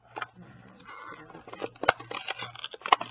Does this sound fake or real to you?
real